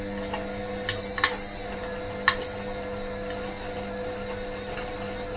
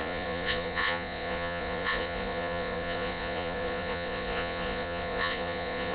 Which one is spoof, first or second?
second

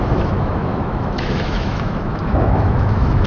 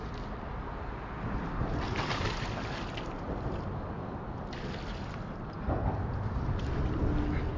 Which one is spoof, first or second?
first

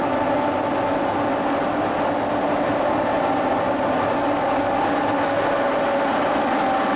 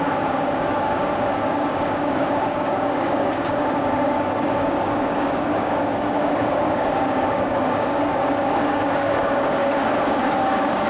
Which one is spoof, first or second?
second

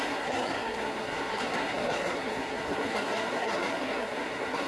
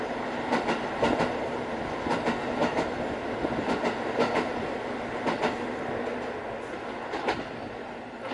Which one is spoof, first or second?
first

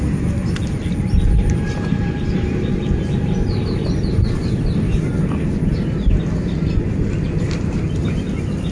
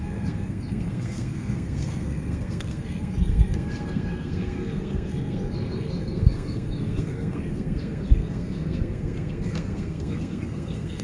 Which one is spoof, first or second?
second